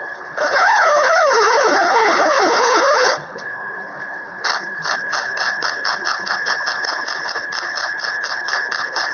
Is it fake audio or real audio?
fake